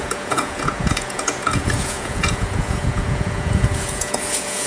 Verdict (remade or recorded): remade